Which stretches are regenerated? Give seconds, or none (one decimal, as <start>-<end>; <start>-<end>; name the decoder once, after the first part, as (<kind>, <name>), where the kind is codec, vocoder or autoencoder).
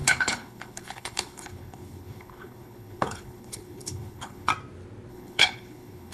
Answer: 0.0-4.5 (codec, HILCodec); 5.1-6.1